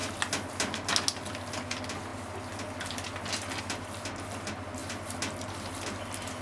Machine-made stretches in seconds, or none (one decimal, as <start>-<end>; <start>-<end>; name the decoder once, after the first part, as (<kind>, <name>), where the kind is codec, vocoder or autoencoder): none

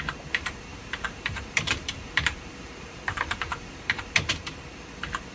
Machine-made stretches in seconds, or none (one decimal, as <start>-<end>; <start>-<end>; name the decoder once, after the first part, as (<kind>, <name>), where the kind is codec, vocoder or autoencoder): 0.7-3.9 (vocoder, BigVGAN v2)